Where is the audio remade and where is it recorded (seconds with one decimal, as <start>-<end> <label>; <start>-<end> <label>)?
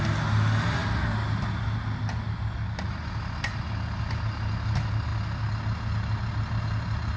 0.0-7.2 recorded